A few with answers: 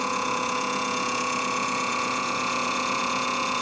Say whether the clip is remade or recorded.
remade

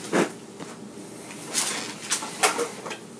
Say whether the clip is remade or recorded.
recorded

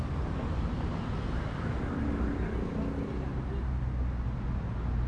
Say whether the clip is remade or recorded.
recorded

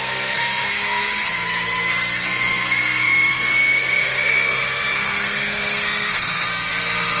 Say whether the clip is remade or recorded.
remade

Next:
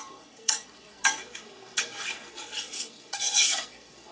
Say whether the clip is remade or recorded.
remade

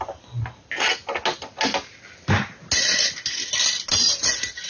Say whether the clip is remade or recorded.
recorded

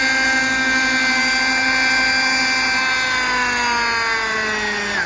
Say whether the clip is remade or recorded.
recorded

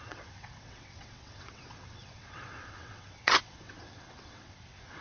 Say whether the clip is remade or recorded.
remade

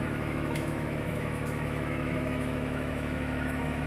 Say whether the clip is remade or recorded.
remade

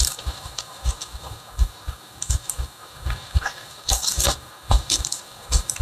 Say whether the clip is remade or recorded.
remade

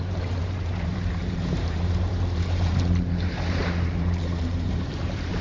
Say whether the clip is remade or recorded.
remade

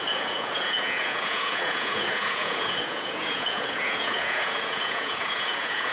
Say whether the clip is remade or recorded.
remade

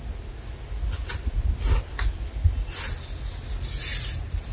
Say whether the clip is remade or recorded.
recorded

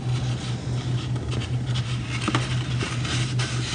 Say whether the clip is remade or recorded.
recorded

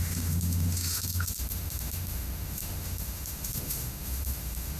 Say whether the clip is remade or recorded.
remade